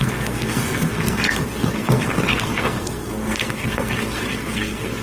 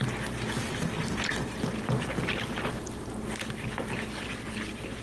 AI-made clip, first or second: first